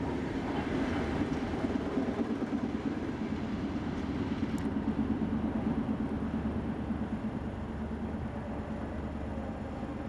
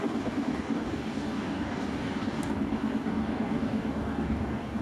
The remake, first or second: second